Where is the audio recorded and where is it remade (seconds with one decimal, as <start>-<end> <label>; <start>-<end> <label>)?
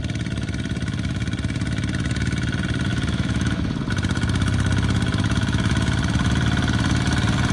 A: 0.0-2.9 recorded; 2.9-3.8 remade; 3.8-7.5 recorded